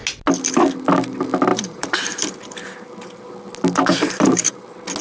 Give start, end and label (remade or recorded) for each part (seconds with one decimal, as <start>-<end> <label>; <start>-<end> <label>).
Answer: 0.0-1.5 recorded; 1.5-2.4 remade; 2.4-3.9 recorded; 3.9-4.6 remade; 4.6-5.0 recorded